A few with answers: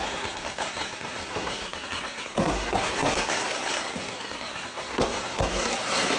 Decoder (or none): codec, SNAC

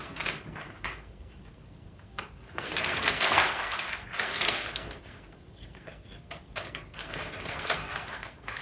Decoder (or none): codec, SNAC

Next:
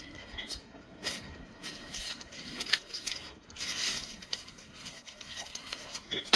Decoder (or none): codec, SNAC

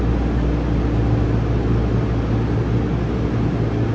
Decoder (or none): none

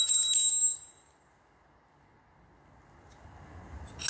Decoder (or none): none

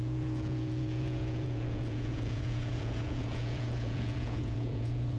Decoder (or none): vocoder, Vocos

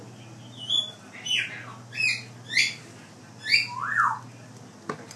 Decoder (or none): none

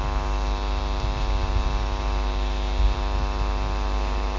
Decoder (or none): none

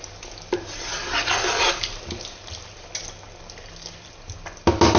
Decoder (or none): none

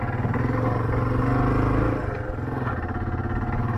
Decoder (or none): none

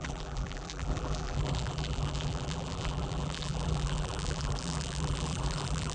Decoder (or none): vocoder, BigVGAN v2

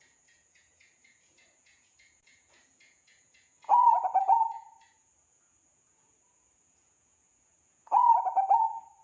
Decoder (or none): vocoder, Vocos